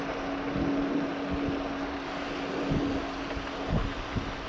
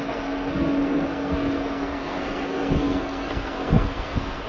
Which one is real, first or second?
first